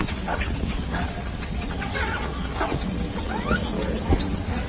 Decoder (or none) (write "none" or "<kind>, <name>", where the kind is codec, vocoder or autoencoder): vocoder, WaveNeXt